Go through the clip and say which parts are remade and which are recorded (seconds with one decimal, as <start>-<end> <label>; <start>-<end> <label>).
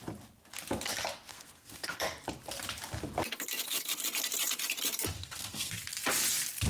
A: 0.0-1.3 recorded; 1.3-2.0 remade; 2.0-5.2 recorded; 5.2-5.8 remade; 5.8-6.7 recorded